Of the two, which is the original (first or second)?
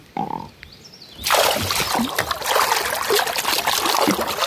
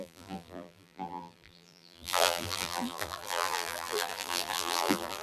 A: first